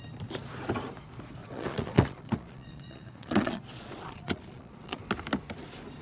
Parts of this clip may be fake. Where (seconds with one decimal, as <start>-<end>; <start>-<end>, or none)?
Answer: 1.4-5.0